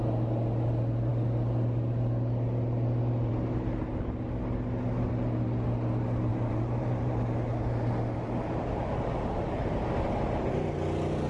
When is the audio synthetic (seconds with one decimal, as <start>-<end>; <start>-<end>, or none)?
6.3-7.2